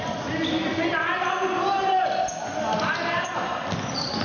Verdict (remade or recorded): recorded